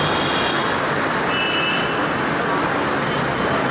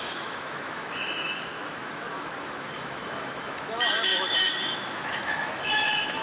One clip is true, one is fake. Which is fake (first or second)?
second